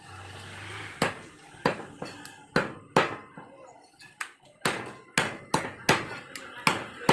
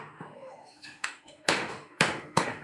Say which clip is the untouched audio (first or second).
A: first